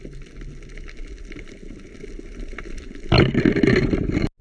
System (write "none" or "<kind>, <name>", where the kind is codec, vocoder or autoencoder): none